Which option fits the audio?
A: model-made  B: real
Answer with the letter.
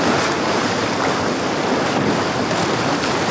B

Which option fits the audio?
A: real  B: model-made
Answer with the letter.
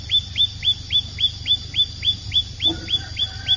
A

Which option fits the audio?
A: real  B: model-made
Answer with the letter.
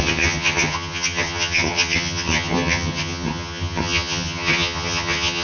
B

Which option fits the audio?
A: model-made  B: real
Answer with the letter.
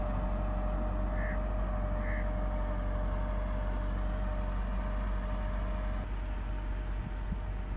B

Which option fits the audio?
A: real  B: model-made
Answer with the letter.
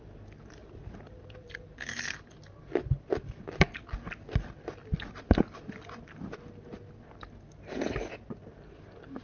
A